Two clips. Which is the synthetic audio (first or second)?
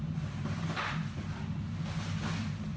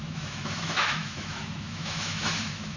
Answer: second